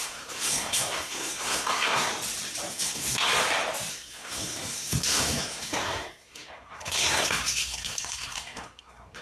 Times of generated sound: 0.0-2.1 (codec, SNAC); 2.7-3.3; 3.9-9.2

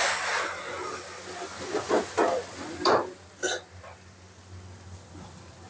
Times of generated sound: none

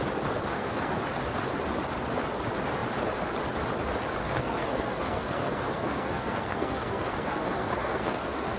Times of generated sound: 0.5-1.0 (codec, SNAC); 4.2-8.6

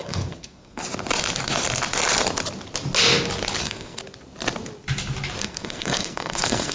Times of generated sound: 0.0-0.8 (codec, SNAC); 3.6-4.0; 5.4-6.7

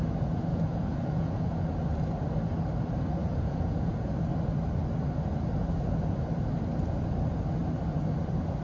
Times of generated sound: 0.5-1.5 (vocoder, Vocos); 3.2-4.1